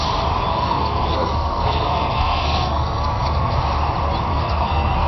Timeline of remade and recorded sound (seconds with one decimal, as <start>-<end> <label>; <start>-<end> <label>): 0.0-0.5 recorded; 0.5-3.6 remade; 3.6-4.3 recorded; 4.3-5.1 remade